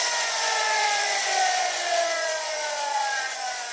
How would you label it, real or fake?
fake